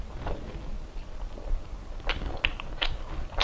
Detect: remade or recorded recorded